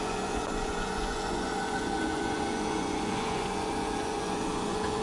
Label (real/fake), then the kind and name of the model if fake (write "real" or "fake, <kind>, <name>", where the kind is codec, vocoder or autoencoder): fake, vocoder, Vocos